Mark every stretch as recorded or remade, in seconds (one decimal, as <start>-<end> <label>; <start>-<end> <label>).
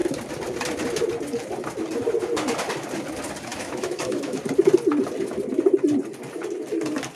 0.0-3.5 recorded; 3.5-4.4 remade; 4.4-7.2 recorded